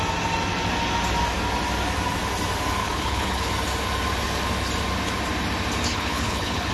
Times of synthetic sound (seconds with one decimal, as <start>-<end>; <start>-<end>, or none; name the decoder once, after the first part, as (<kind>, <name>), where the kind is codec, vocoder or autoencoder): 2.8-3.5 (codec, HILCodec); 5.9-6.7